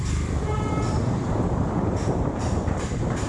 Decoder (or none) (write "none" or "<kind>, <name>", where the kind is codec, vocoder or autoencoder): vocoder, BigVGAN v2